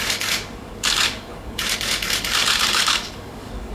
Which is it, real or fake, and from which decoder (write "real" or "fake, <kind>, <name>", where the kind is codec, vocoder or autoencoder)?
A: fake, codec, DAC